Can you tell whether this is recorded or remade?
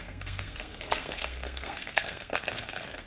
remade